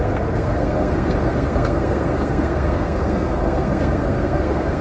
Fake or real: fake